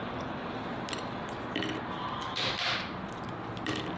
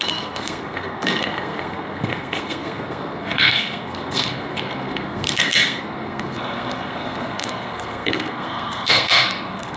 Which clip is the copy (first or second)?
second